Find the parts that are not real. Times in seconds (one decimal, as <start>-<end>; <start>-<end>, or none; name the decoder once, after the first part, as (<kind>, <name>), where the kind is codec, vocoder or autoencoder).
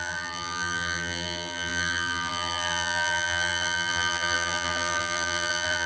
0.0-5.9 (vocoder, BigVGAN v2)